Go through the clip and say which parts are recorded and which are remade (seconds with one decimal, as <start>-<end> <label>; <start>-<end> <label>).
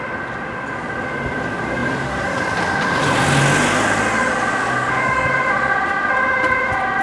0.0-4.6 recorded; 4.6-5.3 remade; 5.3-7.0 recorded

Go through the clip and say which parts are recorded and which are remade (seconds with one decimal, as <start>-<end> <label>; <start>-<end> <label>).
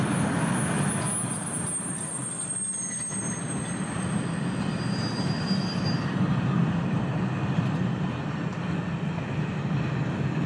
0.0-10.5 recorded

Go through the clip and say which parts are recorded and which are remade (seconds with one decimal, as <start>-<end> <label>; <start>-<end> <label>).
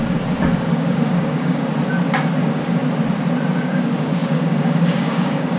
0.0-1.7 remade; 1.7-2.4 recorded; 2.4-2.8 remade; 2.8-3.6 recorded; 3.6-5.6 remade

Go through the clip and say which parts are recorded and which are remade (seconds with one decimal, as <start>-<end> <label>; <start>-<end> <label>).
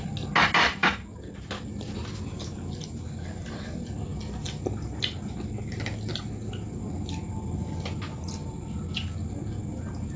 0.0-10.2 recorded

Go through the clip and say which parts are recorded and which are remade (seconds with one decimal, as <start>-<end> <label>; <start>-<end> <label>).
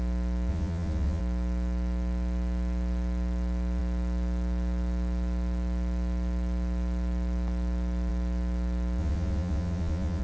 0.0-0.5 recorded; 0.5-1.2 remade; 1.2-9.0 recorded; 9.0-10.2 remade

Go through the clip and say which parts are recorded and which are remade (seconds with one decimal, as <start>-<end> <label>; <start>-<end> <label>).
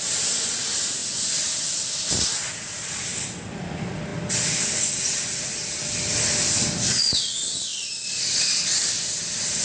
0.0-1.0 recorded; 1.0-2.5 remade; 2.5-7.7 recorded; 7.7-8.2 remade; 8.2-9.6 recorded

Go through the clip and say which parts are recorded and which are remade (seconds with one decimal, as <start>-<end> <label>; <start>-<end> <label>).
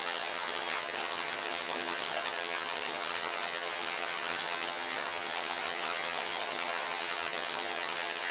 0.0-8.3 remade